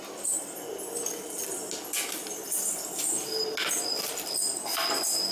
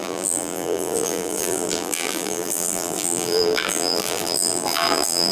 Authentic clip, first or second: first